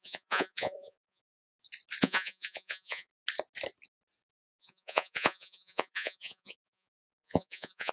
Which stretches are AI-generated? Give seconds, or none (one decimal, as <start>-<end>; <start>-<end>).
0.0-1.4; 2.0-3.1; 4.4-7.9